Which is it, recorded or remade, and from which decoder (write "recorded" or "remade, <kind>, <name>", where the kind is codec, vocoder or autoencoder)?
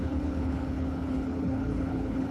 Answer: remade, codec, HILCodec